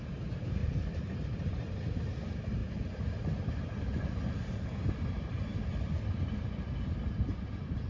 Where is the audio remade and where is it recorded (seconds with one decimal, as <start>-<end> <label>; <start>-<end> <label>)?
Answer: 0.0-0.6 recorded; 0.6-1.5 remade; 1.5-2.6 recorded; 2.6-3.5 remade; 3.5-5.5 recorded; 5.5-6.7 remade; 6.7-7.9 recorded